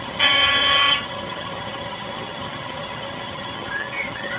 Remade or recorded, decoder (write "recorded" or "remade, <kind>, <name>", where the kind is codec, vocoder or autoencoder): remade, vocoder, HiFi-GAN